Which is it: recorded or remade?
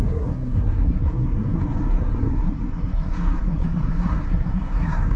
remade